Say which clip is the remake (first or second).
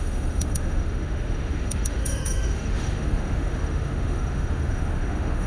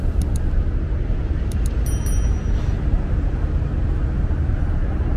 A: first